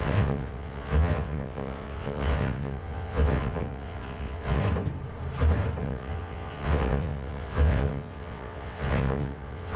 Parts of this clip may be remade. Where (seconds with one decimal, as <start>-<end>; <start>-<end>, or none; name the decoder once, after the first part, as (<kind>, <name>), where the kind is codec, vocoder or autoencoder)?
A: 0.0-4.6 (vocoder, WaveNeXt); 5.8-9.8